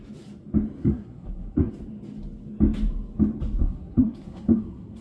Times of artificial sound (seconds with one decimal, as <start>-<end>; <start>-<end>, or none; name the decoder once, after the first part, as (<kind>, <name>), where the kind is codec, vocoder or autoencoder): 0.8-1.7 (codec, SNAC); 3.6-5.0